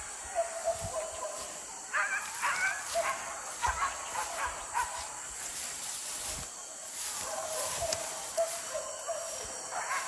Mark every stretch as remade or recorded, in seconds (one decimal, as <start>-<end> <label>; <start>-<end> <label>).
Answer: 0.0-10.1 remade